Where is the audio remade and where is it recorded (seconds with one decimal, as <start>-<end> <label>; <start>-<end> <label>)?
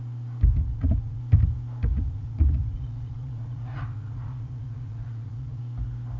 0.0-0.6 recorded; 0.6-1.2 remade; 1.2-1.9 recorded; 1.9-5.6 remade; 5.6-6.2 recorded